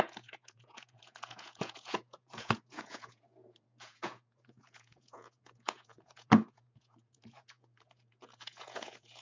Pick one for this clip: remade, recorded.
remade